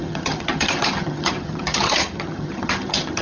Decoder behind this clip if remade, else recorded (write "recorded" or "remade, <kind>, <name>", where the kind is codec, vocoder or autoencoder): remade, vocoder, HiFi-GAN